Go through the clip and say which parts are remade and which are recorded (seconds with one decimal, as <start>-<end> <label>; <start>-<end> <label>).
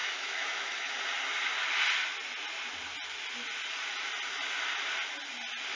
0.0-1.0 remade; 1.0-5.8 recorded